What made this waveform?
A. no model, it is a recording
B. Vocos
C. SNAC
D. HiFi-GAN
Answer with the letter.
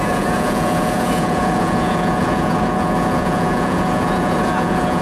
B